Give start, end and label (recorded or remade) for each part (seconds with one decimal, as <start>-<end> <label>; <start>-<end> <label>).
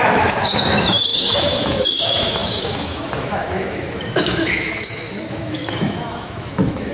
0.0-6.9 remade